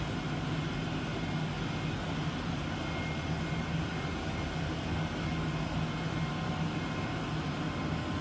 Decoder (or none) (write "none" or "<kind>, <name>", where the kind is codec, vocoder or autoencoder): none